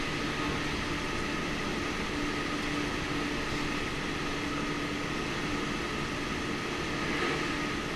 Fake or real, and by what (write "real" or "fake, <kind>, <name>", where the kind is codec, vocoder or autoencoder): real